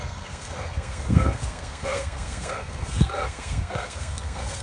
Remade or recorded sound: remade